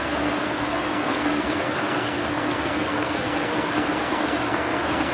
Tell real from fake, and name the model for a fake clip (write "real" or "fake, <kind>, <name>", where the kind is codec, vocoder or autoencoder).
fake, codec, SNAC